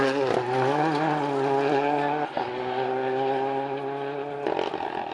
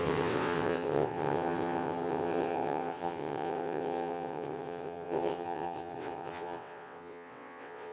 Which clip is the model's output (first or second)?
second